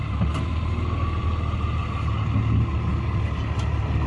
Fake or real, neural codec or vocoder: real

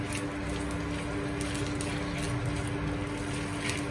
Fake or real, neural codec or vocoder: real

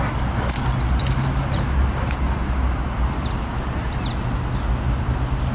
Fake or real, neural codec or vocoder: real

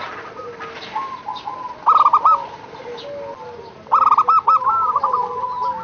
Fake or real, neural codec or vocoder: real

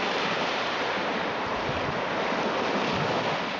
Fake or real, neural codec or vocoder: real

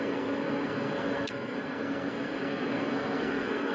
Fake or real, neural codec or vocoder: fake, codec, SNAC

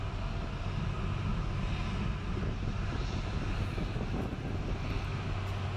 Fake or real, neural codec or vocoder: real